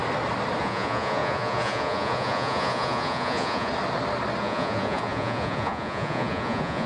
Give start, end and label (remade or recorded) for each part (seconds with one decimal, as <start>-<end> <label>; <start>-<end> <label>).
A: 0.0-0.6 recorded; 0.6-3.7 remade; 3.7-4.4 recorded; 4.4-6.9 remade

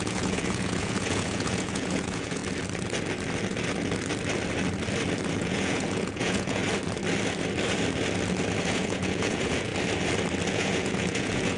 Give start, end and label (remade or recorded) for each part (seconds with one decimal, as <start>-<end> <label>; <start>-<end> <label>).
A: 0.0-2.4 remade; 2.4-5.3 recorded; 5.3-6.6 remade; 6.6-8.7 recorded; 8.7-9.7 remade; 9.7-10.5 recorded; 10.5-11.6 remade

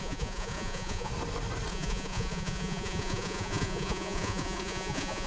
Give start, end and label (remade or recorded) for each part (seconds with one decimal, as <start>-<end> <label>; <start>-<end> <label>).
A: 0.0-1.1 remade; 1.1-1.7 recorded; 1.7-5.3 remade

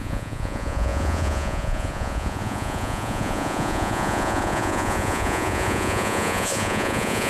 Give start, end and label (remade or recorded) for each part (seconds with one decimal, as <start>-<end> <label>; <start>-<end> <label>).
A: 0.0-7.3 remade

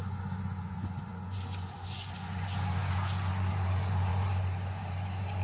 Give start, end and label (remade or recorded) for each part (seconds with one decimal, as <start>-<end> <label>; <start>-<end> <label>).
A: 0.0-5.4 remade

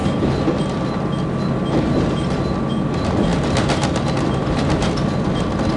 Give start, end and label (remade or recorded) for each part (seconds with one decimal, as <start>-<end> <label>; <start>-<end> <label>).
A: 0.0-5.8 recorded

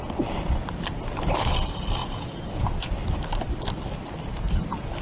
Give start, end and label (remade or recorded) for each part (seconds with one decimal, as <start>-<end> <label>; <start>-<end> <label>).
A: 0.0-2.0 recorded; 2.0-2.9 remade; 2.9-5.0 recorded

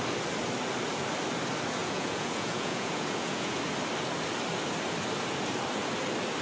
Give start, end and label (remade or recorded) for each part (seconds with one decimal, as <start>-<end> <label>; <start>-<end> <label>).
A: 0.0-1.8 recorded; 1.8-3.6 remade; 3.6-6.4 recorded